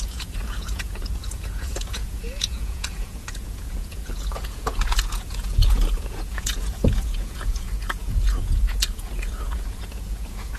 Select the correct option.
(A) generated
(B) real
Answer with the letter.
A